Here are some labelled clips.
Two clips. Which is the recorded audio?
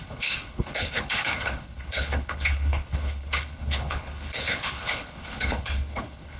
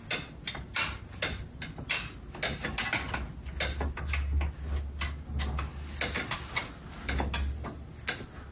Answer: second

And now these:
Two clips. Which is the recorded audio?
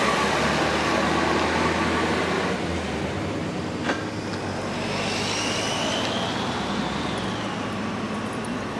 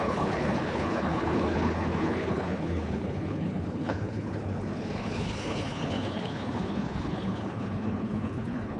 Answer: first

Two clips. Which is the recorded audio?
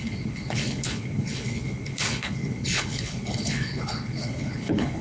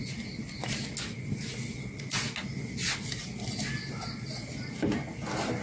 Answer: second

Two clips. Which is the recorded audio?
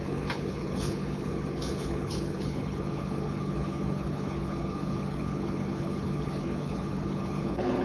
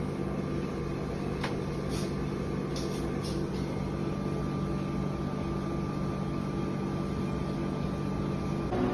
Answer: second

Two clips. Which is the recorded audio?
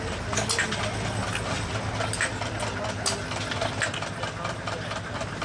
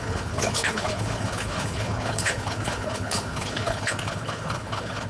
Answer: first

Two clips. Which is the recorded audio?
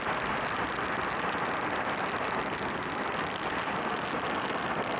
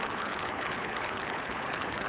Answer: first